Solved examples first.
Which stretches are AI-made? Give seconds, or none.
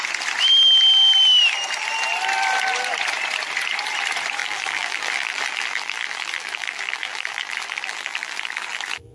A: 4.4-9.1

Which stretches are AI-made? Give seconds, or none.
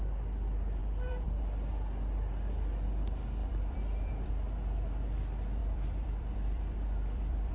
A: 0.8-1.4; 3.4-4.3; 5.6-7.5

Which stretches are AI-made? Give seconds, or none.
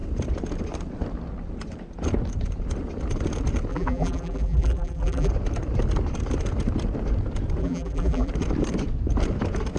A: 3.7-5.3; 7.6-8.3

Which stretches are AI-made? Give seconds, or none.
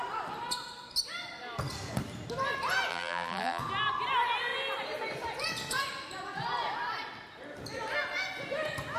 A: 2.9-3.6